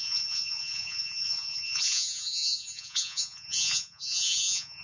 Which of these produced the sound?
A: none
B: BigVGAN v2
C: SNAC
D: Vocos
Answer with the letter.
D